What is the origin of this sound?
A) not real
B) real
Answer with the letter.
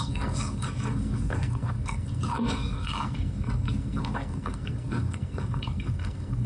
A